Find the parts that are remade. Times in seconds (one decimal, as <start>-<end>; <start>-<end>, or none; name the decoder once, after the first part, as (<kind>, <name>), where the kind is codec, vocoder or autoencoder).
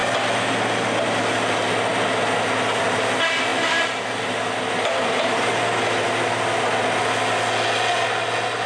none